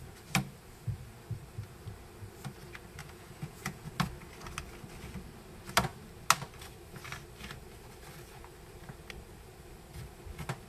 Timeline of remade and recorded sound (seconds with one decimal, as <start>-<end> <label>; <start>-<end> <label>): 0.0-3.0 recorded; 3.0-3.9 remade; 3.9-10.7 recorded